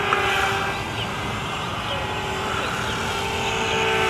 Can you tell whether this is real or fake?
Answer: real